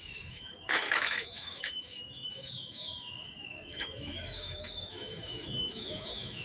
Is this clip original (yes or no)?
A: no